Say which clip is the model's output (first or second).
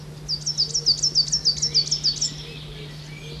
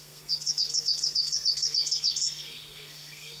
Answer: second